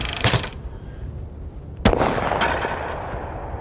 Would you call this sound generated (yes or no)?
no